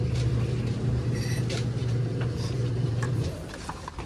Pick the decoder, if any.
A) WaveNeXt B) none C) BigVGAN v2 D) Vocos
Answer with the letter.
C